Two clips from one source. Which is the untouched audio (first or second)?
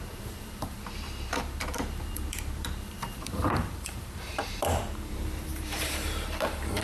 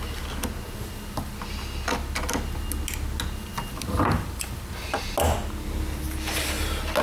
second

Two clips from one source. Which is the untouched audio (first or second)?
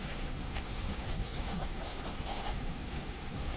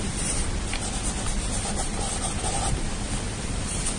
second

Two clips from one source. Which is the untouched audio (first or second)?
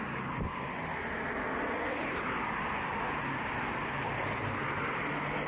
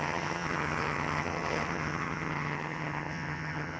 first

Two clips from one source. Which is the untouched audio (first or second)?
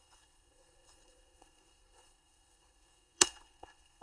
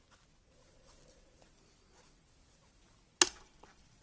second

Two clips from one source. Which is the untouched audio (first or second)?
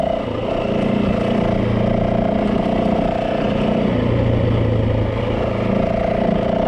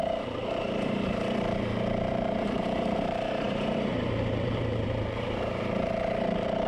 first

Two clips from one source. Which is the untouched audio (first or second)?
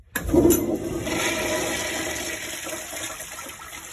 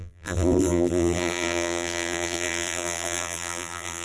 first